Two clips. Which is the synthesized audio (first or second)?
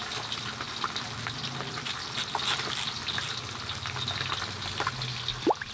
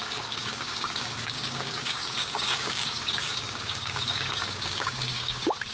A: second